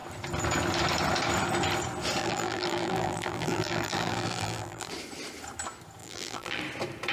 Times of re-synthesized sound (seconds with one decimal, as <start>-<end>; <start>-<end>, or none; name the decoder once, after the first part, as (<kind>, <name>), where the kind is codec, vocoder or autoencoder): 2.2-4.9 (vocoder, BigVGAN v2); 6.0-6.6

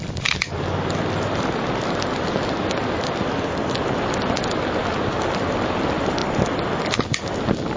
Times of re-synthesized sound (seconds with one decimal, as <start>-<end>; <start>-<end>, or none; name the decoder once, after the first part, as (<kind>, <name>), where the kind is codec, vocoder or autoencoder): none

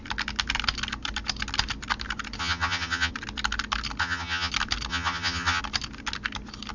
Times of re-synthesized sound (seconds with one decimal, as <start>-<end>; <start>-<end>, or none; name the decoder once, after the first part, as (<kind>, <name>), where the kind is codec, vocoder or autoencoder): 2.4-3.1 (vocoder, HiFi-GAN); 4.0-4.5; 4.9-5.6

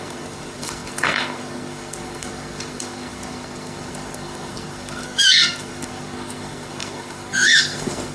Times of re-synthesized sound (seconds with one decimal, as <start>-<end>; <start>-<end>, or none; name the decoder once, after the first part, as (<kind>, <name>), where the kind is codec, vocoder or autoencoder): 0.0-8.1 (codec, SNAC)

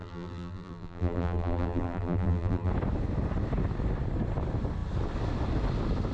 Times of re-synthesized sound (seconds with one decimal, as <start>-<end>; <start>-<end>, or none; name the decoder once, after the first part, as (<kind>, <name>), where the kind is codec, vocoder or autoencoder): 0.0-2.7 (vocoder, BigVGAN v2)

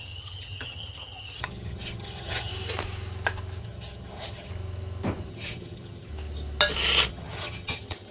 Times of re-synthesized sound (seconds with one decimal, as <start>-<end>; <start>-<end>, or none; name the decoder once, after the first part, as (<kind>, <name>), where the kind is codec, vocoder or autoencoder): 0.0-2.5 (vocoder, HiFi-GAN); 3.6-4.5; 5.3-6.1; 7.1-8.1

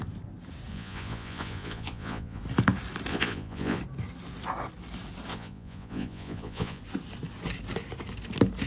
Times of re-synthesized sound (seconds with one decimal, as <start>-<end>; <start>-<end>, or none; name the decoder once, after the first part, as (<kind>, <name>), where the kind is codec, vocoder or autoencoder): 0.7-2.4 (vocoder, Vocos); 3.1-3.8; 5.3-6.8